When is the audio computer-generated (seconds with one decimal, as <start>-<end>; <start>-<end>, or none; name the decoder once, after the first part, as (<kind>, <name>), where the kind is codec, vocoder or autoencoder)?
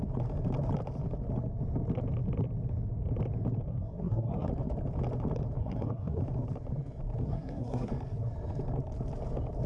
3.7-4.5 (codec, SNAC); 5.6-6.2; 7.2-7.9